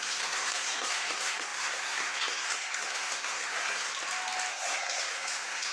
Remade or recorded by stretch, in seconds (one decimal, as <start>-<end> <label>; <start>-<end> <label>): 0.0-3.9 remade; 3.9-4.5 recorded; 4.5-5.7 remade